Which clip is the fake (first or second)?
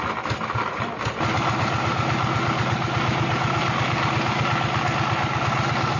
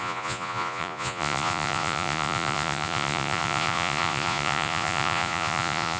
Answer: second